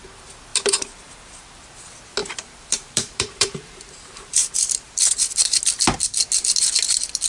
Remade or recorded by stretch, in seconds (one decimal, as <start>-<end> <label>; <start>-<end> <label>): 0.0-0.5 recorded; 0.5-1.5 remade; 1.5-2.2 recorded; 2.2-5.6 remade; 5.6-7.3 recorded

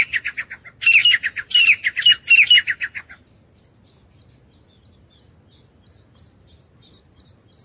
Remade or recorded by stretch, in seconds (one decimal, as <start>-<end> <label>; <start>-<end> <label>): 0.0-7.6 recorded

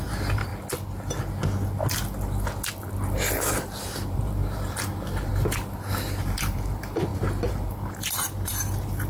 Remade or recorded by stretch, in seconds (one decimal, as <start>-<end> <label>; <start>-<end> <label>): 0.0-0.5 remade; 0.5-3.6 recorded; 3.6-5.3 remade; 5.3-6.2 recorded; 6.2-9.1 remade

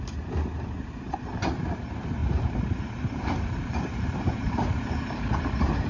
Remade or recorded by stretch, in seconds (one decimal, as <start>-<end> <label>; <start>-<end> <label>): 0.0-2.2 recorded; 2.2-5.9 remade

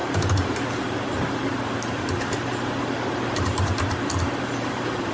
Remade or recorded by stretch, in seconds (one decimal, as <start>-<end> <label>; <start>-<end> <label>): 0.0-3.7 remade; 3.7-4.4 recorded; 4.4-5.1 remade

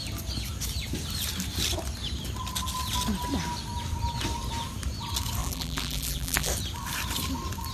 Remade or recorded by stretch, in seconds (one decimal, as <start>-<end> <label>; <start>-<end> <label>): 0.0-5.4 recorded; 5.4-6.5 remade; 6.5-7.7 recorded